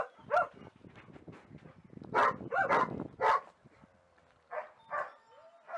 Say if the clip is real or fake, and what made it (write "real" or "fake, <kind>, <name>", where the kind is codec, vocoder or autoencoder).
real